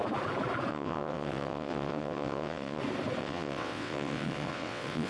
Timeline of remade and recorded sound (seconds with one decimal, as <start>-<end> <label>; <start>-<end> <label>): 0.0-0.7 recorded; 0.7-2.8 remade; 2.8-3.2 recorded; 3.2-5.1 remade